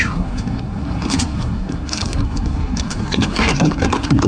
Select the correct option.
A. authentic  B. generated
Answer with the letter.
B